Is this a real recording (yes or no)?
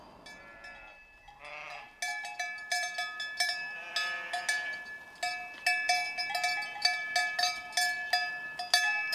yes